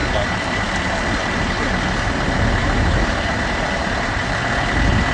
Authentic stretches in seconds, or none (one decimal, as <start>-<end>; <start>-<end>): 0.6-1.2; 1.8-2.6; 4.4-5.1